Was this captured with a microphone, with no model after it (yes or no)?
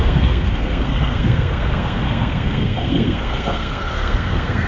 no